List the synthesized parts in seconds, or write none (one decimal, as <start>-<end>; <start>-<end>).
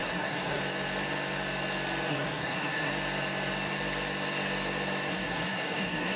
0.0-0.6; 2.1-2.9; 5.1-6.2